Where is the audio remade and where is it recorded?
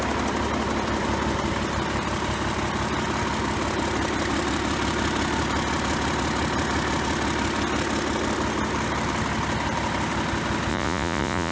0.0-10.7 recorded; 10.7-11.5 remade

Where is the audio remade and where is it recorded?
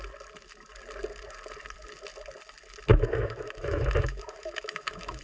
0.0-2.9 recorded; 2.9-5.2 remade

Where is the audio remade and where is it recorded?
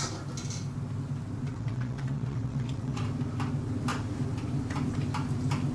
0.0-1.5 recorded; 1.5-3.0 remade; 3.0-5.7 recorded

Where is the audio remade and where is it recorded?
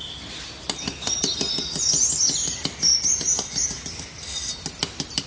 0.0-5.3 recorded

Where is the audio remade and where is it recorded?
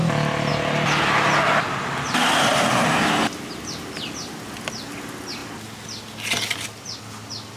0.0-7.6 recorded